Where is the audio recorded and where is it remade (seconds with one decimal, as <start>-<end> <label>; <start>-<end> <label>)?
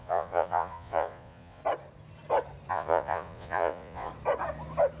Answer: 0.0-1.6 remade; 1.6-2.7 recorded; 2.7-4.1 remade; 4.1-5.0 recorded